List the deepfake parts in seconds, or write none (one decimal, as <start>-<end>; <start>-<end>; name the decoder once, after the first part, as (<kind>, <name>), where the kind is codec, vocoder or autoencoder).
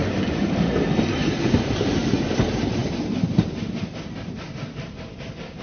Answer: 0.0-2.1 (vocoder, BigVGAN v2)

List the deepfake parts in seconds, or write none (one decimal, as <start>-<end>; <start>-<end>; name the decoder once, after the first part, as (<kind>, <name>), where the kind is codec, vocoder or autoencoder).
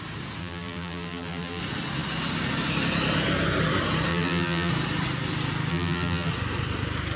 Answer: 0.4-1.6 (vocoder, BigVGAN v2); 4.1-4.7; 5.7-6.3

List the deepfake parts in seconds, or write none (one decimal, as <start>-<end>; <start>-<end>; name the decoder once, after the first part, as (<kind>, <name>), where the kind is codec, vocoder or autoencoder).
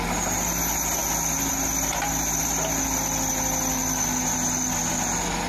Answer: none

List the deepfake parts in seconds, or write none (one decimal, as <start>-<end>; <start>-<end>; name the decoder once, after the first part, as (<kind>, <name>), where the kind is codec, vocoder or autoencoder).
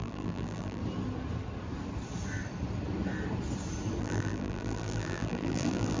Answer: 0.0-0.8 (vocoder, BigVGAN v2); 4.0-6.0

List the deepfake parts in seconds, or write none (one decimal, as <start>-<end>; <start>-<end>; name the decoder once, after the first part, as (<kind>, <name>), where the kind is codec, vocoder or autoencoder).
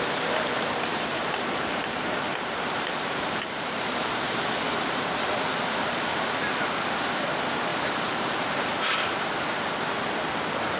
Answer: 1.1-5.2 (vocoder, BigVGAN v2); 7.7-9.3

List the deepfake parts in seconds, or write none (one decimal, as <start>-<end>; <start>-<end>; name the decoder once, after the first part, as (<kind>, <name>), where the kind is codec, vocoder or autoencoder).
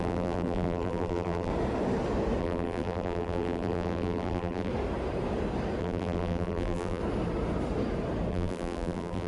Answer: 0.0-1.5 (vocoder, BigVGAN v2); 2.4-4.7; 5.8-7.0; 8.3-9.3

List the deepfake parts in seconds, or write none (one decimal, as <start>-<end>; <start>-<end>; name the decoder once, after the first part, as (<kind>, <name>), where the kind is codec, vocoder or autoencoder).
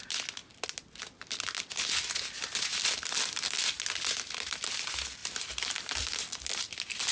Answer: 5.2-6.6 (vocoder, BigVGAN v2)